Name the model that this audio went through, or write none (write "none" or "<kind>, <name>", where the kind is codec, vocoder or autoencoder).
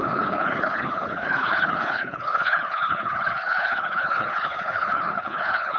codec, HILCodec